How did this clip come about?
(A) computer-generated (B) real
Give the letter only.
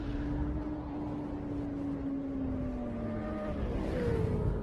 B